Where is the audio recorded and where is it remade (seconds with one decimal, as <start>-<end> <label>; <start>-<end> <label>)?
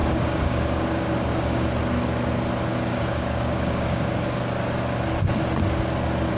0.0-1.8 remade; 1.8-2.9 recorded; 2.9-4.4 remade; 4.4-6.4 recorded